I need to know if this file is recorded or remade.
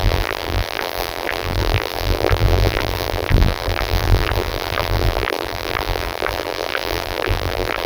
remade